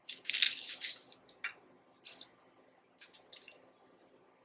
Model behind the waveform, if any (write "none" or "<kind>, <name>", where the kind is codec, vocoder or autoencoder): none